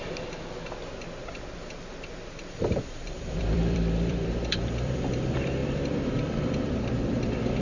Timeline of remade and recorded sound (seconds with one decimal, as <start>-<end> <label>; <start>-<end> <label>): 0.0-2.6 recorded; 2.6-7.6 remade